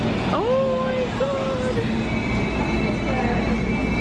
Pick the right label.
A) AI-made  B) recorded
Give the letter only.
B